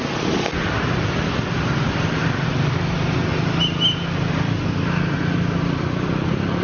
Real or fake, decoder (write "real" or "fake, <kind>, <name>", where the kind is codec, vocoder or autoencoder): real